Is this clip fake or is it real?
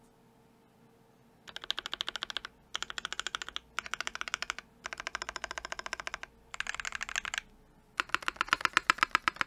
real